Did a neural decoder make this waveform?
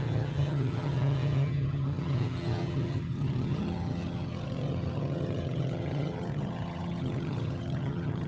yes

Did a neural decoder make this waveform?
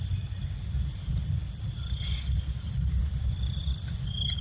no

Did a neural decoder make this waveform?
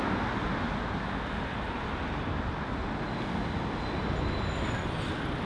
no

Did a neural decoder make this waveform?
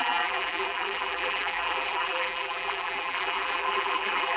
yes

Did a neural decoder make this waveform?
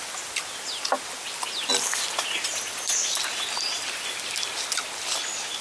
no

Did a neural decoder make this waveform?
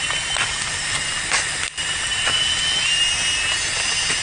no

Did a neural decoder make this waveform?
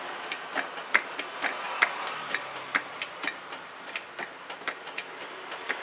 no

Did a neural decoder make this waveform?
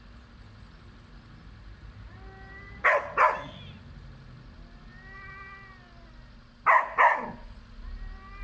no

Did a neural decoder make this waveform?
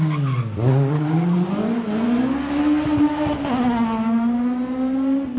no